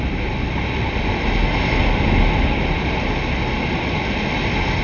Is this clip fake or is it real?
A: real